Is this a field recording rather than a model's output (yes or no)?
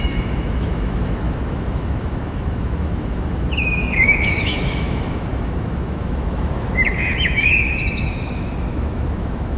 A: no